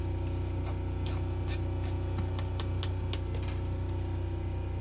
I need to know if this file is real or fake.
real